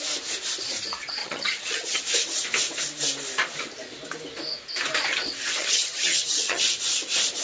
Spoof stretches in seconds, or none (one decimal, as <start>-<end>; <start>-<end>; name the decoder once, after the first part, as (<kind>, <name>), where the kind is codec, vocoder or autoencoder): 1.2-2.0 (vocoder, HiFi-GAN); 5.6-6.6